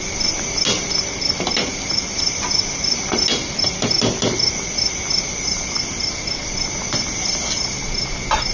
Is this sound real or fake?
real